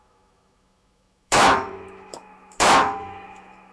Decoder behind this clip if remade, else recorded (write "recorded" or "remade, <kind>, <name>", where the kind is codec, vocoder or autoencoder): remade, autoencoder, DAC-VAE